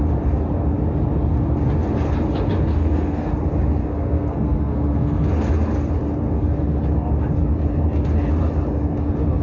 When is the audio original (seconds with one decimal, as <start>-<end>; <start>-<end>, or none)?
0.0-2.7; 3.3-3.8; 5.3-9.4